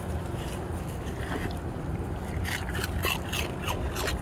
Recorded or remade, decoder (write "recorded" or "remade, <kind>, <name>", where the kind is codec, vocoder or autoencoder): recorded